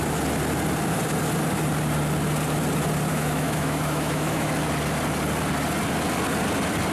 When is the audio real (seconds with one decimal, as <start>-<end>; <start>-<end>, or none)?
0.0-3.1; 4.5-6.9